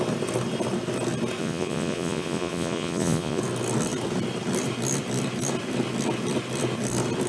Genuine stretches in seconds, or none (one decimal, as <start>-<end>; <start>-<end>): 0.0-1.4; 3.4-7.3